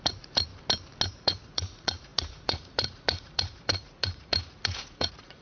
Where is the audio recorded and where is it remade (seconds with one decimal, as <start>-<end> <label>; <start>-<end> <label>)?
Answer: 0.0-0.5 remade; 0.5-1.1 recorded; 1.1-5.4 remade